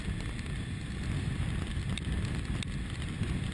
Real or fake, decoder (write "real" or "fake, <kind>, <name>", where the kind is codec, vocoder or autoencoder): real